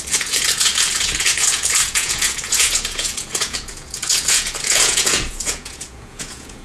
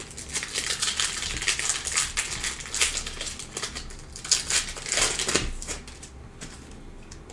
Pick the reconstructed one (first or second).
first